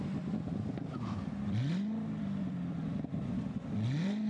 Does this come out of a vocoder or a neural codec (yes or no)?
yes